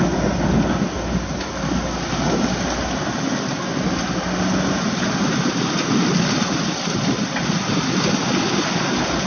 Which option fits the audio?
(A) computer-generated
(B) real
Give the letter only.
B